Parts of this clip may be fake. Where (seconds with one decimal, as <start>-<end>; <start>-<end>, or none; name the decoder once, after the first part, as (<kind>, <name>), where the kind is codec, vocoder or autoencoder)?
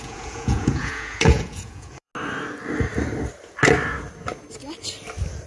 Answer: 0.0-2.1 (vocoder, Vocos)